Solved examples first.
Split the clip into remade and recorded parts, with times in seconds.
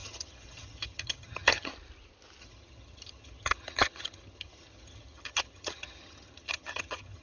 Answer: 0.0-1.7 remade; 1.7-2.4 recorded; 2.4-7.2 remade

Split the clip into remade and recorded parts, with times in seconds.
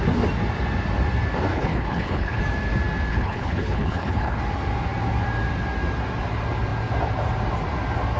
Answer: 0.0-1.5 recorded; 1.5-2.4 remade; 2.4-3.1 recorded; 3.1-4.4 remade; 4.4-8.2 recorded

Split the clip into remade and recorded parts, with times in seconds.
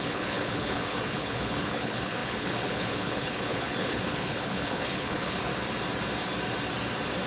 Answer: 0.0-5.5 remade; 5.5-7.3 recorded